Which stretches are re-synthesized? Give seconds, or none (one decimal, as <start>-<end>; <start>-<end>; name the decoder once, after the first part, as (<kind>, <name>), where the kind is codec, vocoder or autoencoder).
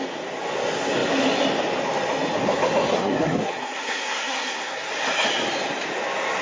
2.9-4.9 (codec, SNAC)